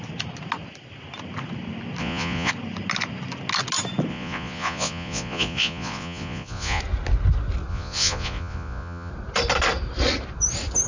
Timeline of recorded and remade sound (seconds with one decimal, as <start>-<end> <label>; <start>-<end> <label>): 0.0-2.0 recorded; 2.0-2.5 remade; 2.5-4.1 recorded; 4.1-6.8 remade; 6.8-7.7 recorded; 7.7-9.1 remade; 9.1-10.9 recorded